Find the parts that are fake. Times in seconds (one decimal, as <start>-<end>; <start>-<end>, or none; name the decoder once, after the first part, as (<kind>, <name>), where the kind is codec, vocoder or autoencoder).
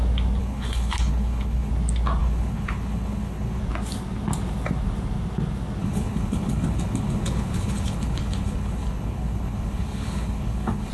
0.4-1.7 (codec, HILCodec); 2.2-3.6; 5.8-10.9